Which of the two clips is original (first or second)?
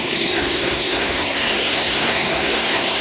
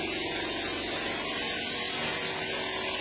second